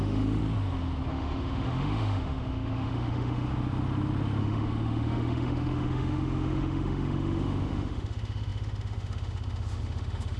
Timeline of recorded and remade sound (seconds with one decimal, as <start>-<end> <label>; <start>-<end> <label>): 0.0-0.4 remade; 0.4-1.1 recorded; 1.1-3.5 remade; 3.5-4.4 recorded; 4.4-10.4 remade